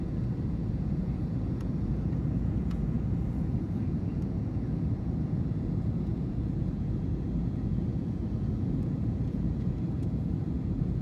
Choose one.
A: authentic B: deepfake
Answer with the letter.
B